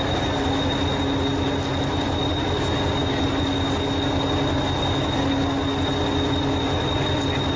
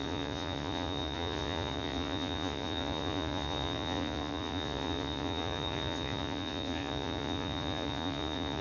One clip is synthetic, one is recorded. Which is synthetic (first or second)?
second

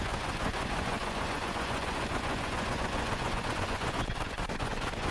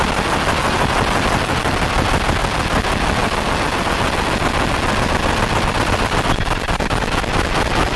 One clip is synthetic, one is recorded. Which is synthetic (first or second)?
first